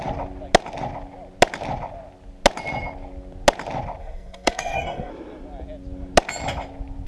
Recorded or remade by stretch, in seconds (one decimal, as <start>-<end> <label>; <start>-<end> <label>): 0.0-4.0 recorded; 4.0-5.1 remade; 5.1-7.1 recorded